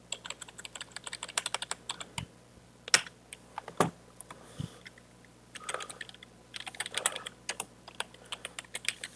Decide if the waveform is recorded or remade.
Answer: recorded